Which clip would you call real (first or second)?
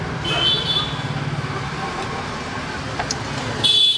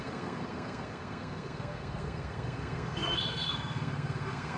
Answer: first